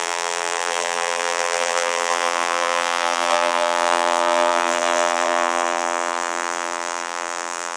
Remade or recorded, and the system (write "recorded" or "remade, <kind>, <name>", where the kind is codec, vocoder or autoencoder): remade, vocoder, BigVGAN v2